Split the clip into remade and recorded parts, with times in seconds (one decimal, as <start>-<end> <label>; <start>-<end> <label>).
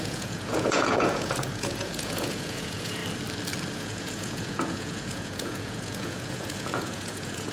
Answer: 0.0-3.0 remade; 3.0-3.7 recorded; 3.7-7.5 remade